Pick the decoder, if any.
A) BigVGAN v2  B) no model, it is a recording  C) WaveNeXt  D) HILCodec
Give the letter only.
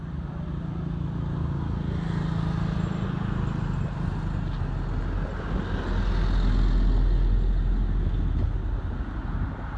B